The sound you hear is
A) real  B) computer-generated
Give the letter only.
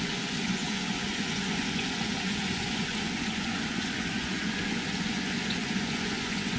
B